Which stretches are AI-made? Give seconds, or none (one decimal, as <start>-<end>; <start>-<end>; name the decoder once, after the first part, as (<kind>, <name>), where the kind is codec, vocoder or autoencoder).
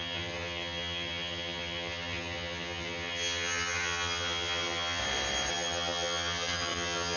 0.0-5.0 (vocoder, HiFi-GAN); 5.5-7.2